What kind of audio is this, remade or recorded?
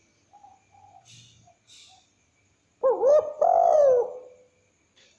recorded